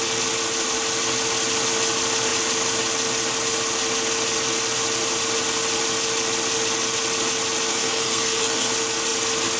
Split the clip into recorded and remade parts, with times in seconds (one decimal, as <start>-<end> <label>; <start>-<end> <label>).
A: 0.0-7.7 recorded; 7.7-8.7 remade; 8.7-9.6 recorded